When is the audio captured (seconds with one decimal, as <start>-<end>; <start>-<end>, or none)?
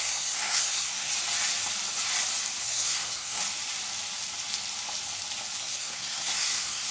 1.1-2.6; 3.4-5.6